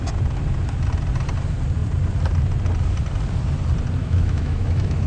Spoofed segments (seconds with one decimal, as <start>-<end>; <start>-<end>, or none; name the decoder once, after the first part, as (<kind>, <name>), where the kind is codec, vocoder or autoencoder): 4.0-5.1 (autoencoder, DAC-VAE)